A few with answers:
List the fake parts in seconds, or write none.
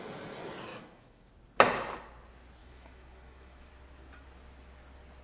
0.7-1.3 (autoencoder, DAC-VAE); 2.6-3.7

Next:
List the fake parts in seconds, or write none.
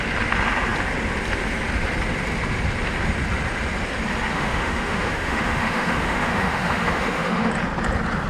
4.3-7.5 (autoencoder, DAC-VAE)